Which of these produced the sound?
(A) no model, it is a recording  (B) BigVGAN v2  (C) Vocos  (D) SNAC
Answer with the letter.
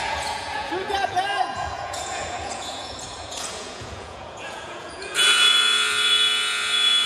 C